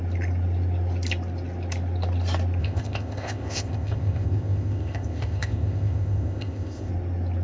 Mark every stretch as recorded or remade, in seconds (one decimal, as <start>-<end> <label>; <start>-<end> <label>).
0.0-2.6 recorded; 2.6-6.9 remade; 6.9-7.4 recorded